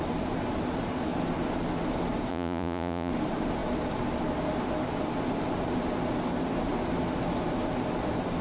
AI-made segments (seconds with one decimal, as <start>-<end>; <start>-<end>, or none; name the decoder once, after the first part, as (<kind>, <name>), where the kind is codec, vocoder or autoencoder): 2.3-3.1 (vocoder, Vocos)